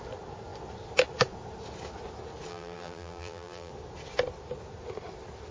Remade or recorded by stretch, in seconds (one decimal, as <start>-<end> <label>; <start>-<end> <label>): 0.0-2.5 recorded; 2.5-3.7 remade; 3.7-5.5 recorded